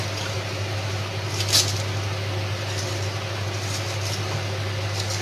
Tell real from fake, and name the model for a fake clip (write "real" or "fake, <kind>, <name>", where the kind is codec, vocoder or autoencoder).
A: real